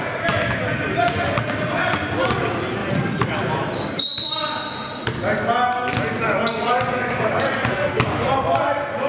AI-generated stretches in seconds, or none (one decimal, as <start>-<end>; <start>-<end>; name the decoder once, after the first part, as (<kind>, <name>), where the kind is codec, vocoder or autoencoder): 2.8-4.4 (vocoder, BigVGAN v2)